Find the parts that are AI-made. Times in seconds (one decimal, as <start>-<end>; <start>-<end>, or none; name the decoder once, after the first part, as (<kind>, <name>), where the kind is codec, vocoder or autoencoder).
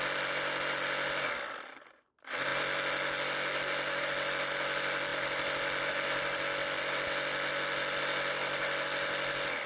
none